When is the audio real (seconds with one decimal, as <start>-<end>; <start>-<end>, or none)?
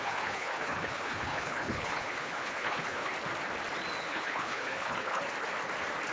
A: 3.1-4.0; 5.2-6.1